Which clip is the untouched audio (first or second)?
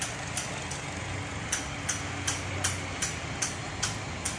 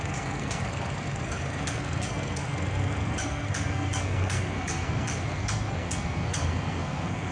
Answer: first